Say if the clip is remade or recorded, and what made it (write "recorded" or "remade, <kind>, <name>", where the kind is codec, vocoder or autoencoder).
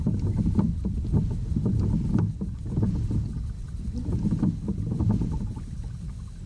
recorded